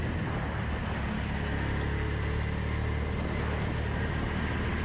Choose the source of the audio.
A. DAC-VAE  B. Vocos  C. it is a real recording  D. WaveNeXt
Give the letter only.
C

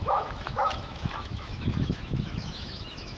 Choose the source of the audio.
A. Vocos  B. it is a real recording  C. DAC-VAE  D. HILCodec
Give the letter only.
C